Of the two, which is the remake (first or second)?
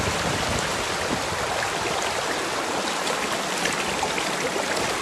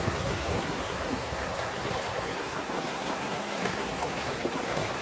second